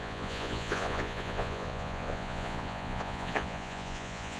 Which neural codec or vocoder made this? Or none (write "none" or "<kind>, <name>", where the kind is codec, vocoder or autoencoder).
vocoder, Vocos